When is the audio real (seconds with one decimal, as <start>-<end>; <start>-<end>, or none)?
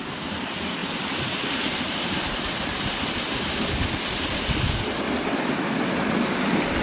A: 0.0-0.8; 4.0-6.8